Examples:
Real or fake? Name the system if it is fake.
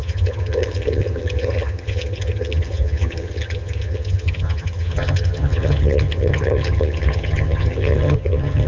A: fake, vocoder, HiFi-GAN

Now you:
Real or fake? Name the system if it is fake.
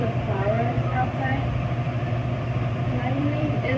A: fake, vocoder, BigVGAN v2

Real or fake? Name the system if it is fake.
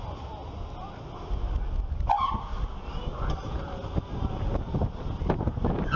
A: real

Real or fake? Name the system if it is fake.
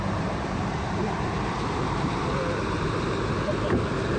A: fake, vocoder, BigVGAN v2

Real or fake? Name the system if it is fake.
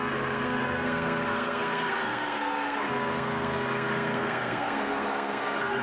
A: fake, codec, SNAC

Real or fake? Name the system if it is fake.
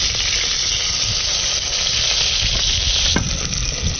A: real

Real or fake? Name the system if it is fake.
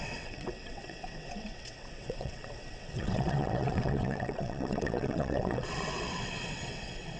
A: fake, vocoder, WaveNeXt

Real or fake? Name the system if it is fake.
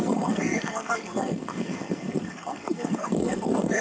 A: fake, codec, SNAC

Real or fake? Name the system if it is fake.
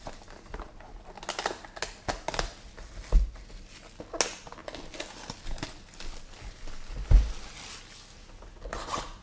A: real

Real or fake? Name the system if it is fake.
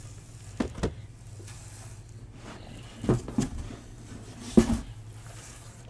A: real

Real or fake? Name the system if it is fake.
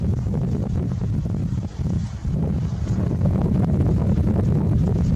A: real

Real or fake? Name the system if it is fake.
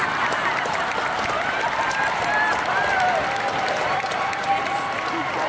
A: real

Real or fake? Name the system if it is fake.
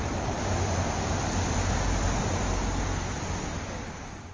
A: real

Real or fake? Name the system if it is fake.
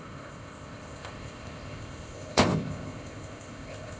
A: fake, codec, ZipCodec